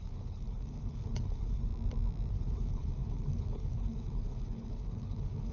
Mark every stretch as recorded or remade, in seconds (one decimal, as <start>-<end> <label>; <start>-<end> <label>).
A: 0.0-1.7 remade; 1.7-2.3 recorded; 2.3-5.5 remade